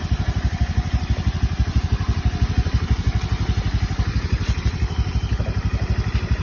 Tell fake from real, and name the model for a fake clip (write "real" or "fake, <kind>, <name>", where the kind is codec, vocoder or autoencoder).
real